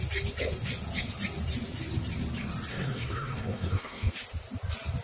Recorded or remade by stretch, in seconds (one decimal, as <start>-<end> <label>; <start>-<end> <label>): 0.0-2.7 recorded; 2.7-4.1 remade; 4.1-5.0 recorded